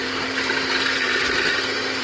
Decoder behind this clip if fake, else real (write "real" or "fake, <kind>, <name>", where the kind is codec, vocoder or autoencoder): fake, vocoder, BigVGAN v2